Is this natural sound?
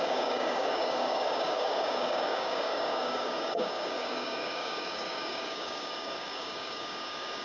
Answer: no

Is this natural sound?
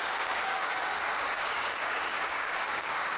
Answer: no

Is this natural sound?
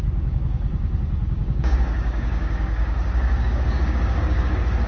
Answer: no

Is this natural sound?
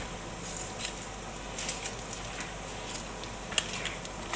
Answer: yes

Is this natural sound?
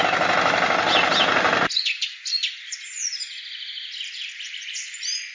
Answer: yes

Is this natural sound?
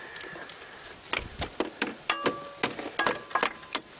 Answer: yes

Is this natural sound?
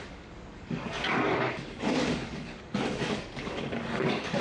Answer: no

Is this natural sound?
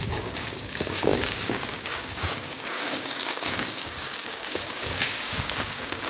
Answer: no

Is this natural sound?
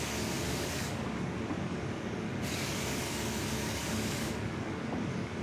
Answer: no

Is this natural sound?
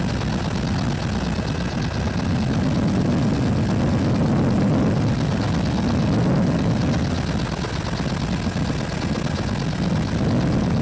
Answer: yes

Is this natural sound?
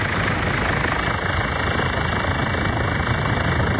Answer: yes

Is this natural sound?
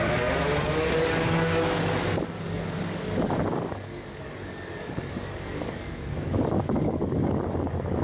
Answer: no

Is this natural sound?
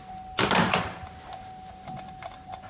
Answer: yes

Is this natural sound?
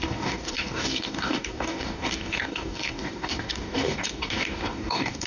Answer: no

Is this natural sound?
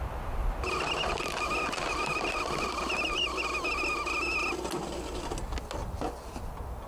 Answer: yes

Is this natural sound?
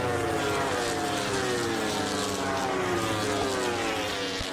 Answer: yes